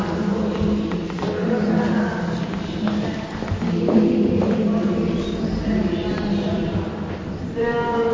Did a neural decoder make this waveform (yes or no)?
no